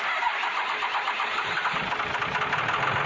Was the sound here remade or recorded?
recorded